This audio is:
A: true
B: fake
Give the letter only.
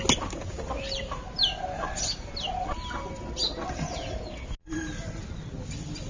A